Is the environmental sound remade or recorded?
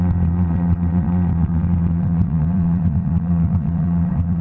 remade